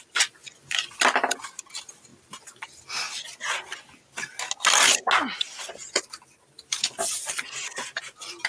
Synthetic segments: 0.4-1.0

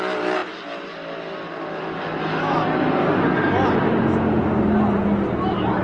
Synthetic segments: none

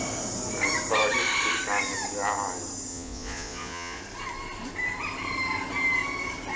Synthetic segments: 2.9-4.0

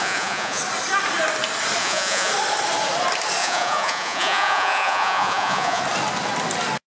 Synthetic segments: 0.0-0.6; 1.8-2.3; 3.4-5.8

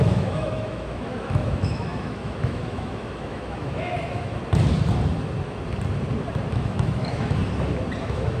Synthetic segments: 0.0-4.4; 6.5-7.4; 8.0-8.4